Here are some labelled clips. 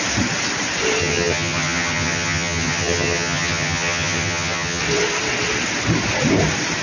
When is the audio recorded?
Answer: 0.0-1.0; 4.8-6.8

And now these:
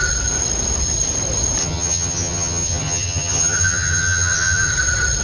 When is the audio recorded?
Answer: 0.0-1.6; 4.7-5.2

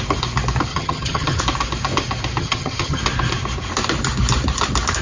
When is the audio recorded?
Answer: 0.0-0.7; 1.4-2.4; 3.0-5.0

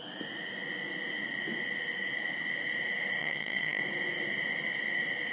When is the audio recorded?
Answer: 0.0-3.2; 3.8-5.3

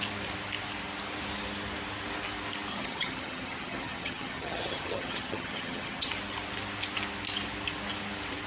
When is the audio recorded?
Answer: 0.0-2.7; 6.1-8.5